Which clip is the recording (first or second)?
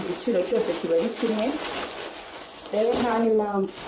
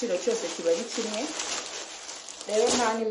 second